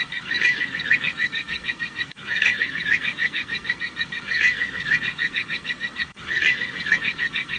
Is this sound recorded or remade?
remade